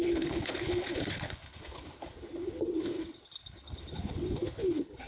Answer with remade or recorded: remade